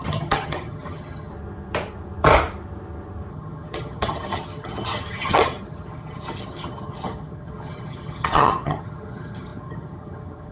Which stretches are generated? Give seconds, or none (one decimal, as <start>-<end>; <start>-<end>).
0.0-1.3; 3.3-10.5